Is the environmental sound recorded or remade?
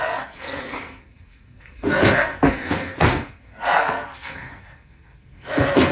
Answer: remade